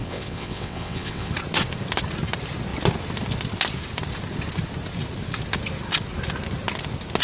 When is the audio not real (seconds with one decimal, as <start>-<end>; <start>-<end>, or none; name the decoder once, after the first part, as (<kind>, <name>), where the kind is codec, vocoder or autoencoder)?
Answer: 0.0-1.3 (vocoder, WaveNeXt)